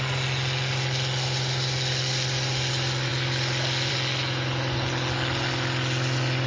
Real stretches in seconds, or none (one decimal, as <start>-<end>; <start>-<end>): 0.0-6.5

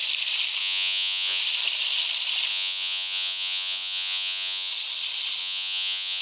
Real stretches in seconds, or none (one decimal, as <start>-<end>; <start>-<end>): 0.0-0.6; 1.4-2.5; 4.7-5.4

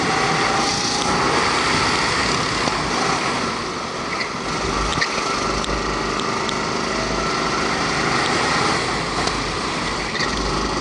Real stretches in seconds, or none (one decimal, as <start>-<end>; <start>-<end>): 0.0-10.8

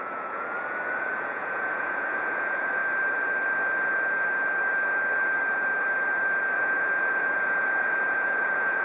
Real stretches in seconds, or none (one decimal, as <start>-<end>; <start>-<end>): 2.8-6.5

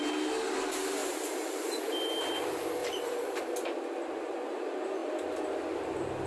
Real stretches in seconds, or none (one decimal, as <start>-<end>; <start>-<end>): 0.0-1.0; 1.9-2.8; 3.4-6.3